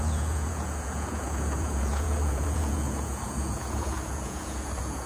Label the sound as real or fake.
fake